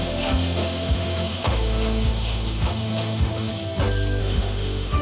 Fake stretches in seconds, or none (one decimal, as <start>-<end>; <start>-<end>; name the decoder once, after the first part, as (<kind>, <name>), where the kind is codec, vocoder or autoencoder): 0.0-3.5 (autoencoder, DAC-VAE); 4.2-5.0